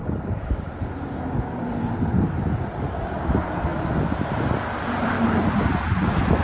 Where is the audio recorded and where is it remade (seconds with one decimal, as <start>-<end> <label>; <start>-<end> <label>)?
0.0-6.4 recorded